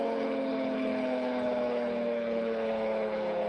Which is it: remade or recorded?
remade